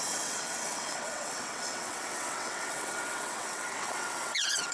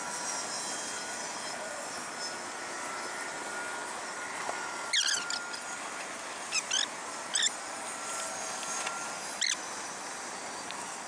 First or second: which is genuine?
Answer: second